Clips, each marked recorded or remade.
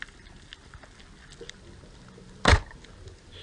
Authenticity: recorded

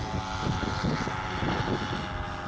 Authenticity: recorded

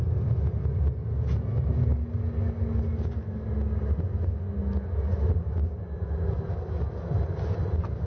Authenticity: recorded